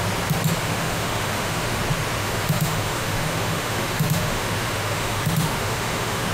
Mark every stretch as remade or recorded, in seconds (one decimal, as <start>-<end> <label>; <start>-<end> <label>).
0.0-0.6 recorded; 0.6-1.8 remade; 1.8-2.2 recorded; 2.2-6.3 remade